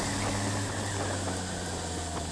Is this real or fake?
real